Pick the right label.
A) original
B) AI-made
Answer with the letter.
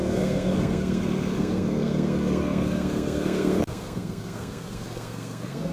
B